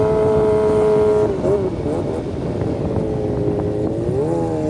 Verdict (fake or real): real